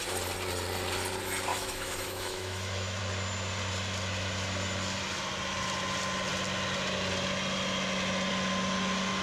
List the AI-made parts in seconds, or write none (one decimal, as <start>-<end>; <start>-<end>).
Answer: 1.5-3.0

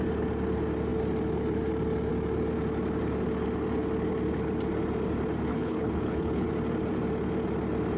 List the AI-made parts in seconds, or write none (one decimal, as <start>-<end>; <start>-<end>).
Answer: 5.5-6.5

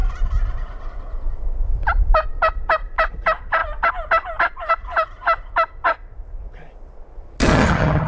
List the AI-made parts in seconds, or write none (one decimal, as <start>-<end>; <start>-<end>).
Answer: 7.4-8.1

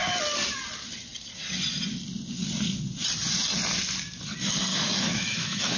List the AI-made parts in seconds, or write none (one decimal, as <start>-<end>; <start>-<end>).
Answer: 4.7-5.8

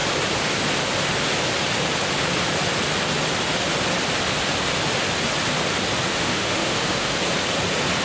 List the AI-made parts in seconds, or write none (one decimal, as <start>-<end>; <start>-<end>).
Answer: 6.1-7.1